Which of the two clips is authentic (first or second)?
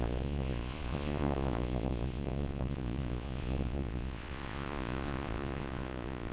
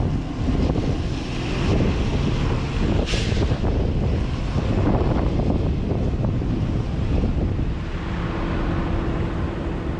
second